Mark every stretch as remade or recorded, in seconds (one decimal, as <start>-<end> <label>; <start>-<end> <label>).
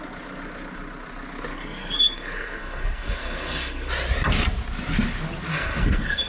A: 0.0-1.5 recorded; 1.5-3.9 remade; 3.9-5.5 recorded; 5.5-6.3 remade